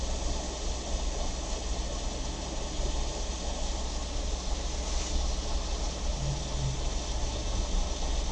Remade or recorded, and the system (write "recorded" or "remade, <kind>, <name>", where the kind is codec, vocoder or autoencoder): recorded